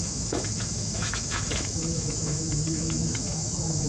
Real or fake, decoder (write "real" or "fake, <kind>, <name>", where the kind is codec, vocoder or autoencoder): fake, autoencoder, DAC-VAE